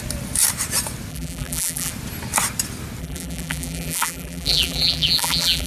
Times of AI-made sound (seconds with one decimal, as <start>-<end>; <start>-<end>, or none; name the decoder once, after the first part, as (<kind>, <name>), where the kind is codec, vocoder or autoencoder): 1.1-1.9 (vocoder, BigVGAN v2); 3.0-5.7